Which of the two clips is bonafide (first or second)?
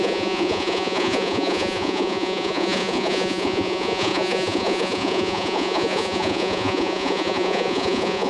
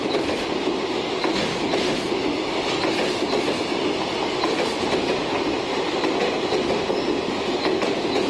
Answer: second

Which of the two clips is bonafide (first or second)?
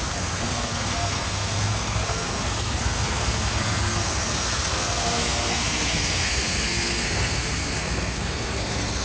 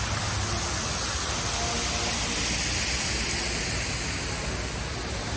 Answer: second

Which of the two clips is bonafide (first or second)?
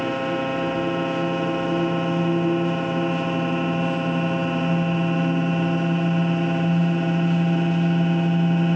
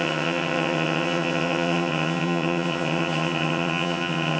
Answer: first